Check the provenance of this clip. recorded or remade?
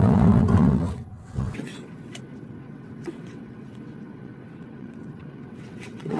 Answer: remade